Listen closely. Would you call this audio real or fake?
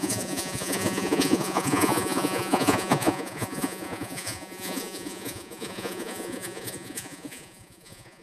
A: fake